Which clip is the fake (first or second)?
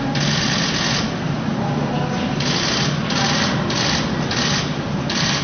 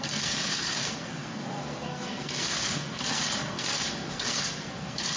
second